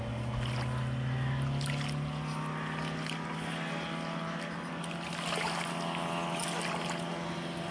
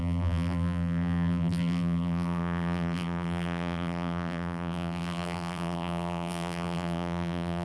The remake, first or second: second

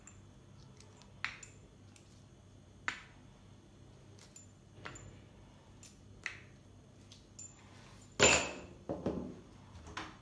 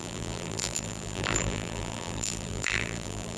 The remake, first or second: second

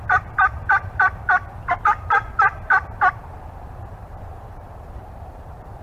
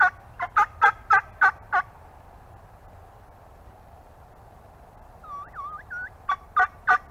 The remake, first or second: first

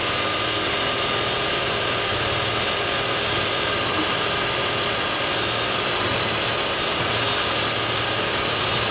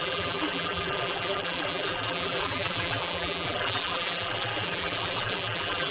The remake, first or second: second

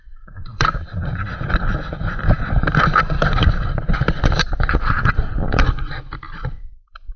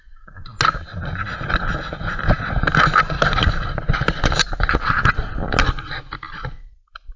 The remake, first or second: first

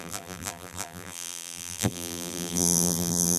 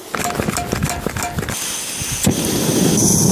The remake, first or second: first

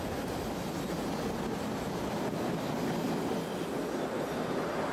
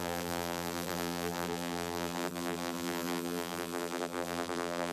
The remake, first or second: second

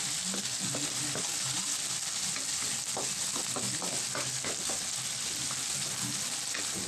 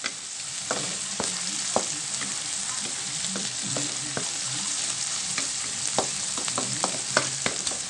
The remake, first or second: second